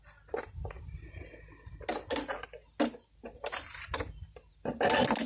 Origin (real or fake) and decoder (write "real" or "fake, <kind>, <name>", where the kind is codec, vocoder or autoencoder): real